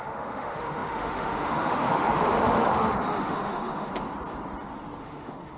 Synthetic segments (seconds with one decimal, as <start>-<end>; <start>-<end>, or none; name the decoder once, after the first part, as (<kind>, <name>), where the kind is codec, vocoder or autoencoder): 0.0-3.9 (autoencoder, DAC-VAE); 5.0-5.6